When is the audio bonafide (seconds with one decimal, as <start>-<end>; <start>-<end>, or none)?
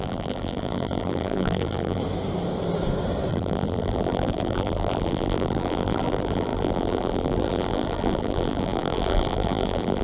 2.0-3.3